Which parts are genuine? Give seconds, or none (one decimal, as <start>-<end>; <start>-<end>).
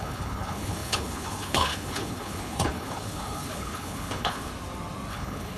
4.5-5.1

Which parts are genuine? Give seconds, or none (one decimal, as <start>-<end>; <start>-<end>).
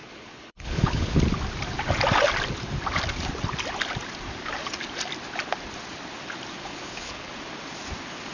1.2-6.6; 7.3-8.3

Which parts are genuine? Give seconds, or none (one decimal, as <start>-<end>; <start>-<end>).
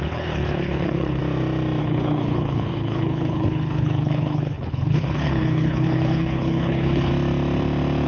1.2-1.8; 7.1-8.1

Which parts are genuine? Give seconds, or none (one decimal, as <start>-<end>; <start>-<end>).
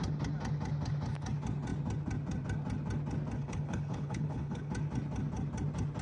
0.0-3.4; 4.7-6.0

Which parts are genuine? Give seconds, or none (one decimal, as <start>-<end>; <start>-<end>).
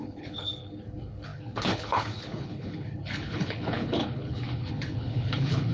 none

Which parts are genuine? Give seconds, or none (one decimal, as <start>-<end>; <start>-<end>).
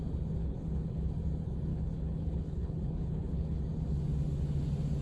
0.0-0.4; 1.1-1.7; 3.6-5.0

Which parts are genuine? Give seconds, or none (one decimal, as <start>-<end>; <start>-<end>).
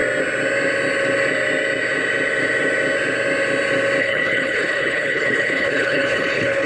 0.0-4.0